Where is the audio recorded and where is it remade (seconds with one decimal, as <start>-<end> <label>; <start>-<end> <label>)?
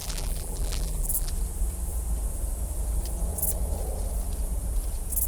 0.0-1.3 remade; 1.3-5.3 recorded